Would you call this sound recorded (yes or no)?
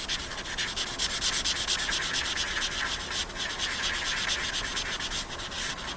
yes